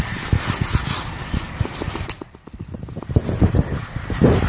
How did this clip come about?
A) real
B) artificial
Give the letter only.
B